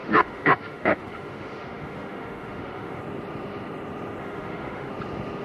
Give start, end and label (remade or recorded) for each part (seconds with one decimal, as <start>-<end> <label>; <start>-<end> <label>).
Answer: 0.0-3.0 remade; 3.0-4.2 recorded; 4.2-4.9 remade; 4.9-5.4 recorded

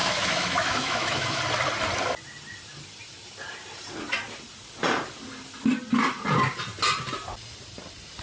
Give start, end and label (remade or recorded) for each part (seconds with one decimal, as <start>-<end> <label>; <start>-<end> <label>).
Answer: 0.0-1.4 remade; 1.4-8.2 recorded